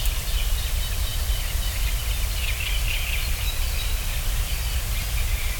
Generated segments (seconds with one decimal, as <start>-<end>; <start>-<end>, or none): 0.0-5.6